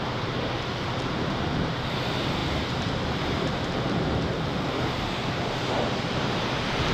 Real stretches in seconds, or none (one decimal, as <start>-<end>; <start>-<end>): none